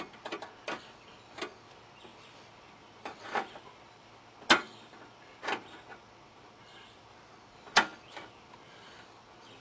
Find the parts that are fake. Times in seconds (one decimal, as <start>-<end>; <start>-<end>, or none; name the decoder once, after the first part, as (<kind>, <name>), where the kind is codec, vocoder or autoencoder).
none